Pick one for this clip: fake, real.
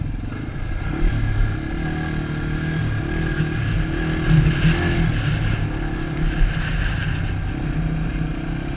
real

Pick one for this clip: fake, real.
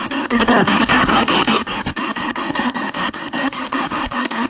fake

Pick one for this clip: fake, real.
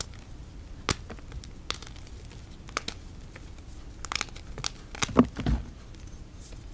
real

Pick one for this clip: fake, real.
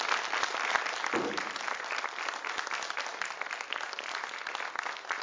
real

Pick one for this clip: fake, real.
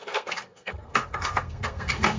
fake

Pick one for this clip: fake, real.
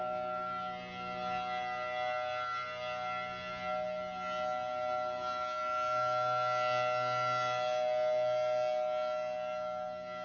real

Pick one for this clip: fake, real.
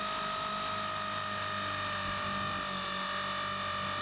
real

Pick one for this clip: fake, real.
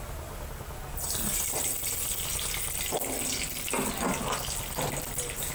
real